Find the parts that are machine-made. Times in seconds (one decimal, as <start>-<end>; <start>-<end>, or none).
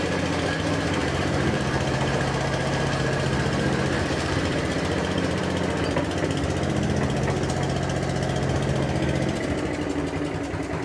1.0-5.4